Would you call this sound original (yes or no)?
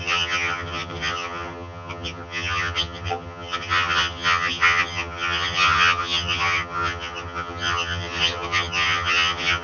no